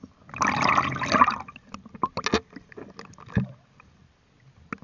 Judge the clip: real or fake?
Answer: real